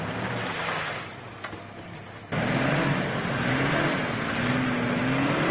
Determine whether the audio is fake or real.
real